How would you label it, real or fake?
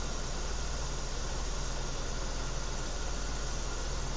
real